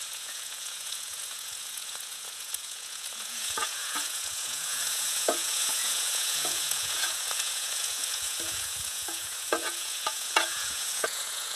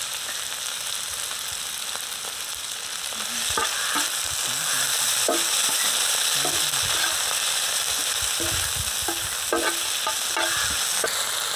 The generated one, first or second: first